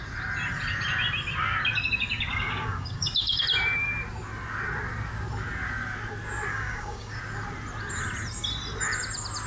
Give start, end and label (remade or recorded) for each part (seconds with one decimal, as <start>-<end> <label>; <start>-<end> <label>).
0.0-2.3 recorded; 2.3-3.4 remade; 3.4-6.5 recorded; 6.5-7.2 remade; 7.2-9.5 recorded